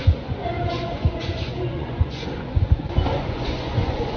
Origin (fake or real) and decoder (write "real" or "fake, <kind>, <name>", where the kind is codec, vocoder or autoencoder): fake, vocoder, Vocos